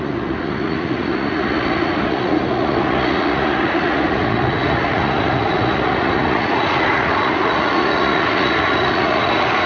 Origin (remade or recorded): remade